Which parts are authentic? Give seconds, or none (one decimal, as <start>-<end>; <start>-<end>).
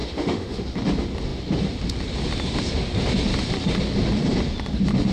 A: 0.6-5.1